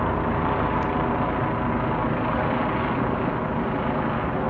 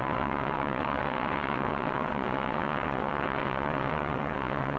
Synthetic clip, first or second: second